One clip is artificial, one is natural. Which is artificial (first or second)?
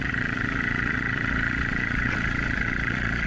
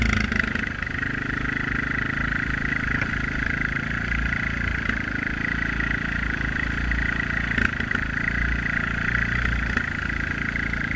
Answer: first